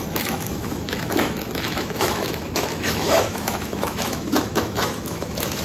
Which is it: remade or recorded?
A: remade